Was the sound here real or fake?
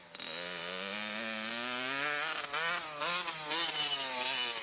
real